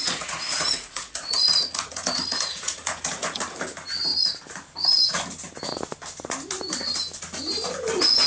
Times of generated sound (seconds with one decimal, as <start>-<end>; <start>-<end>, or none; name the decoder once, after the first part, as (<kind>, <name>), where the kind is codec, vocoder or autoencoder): 0.0-3.4 (vocoder, Vocos)